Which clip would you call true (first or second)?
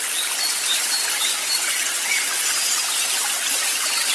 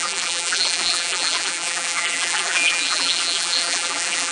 first